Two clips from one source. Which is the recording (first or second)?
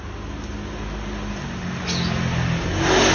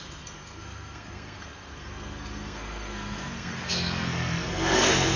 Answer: first